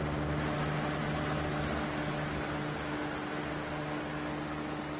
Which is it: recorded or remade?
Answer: recorded